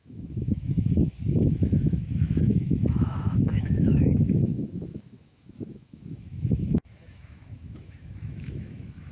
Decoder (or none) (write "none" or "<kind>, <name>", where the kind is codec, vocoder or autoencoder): autoencoder, DAC-VAE